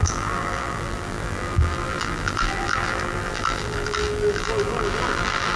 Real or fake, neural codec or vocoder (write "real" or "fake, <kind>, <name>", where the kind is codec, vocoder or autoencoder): fake, vocoder, BigVGAN v2